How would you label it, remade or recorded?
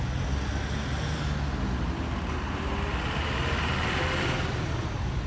recorded